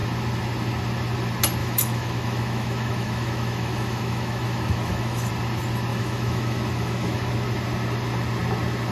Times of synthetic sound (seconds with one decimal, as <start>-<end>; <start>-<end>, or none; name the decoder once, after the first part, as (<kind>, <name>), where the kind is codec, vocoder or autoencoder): 1.6-5.3 (autoencoder, DAC-VAE); 5.9-7.3